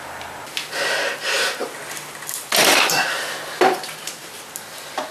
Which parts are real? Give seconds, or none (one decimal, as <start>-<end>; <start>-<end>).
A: 0.0-5.1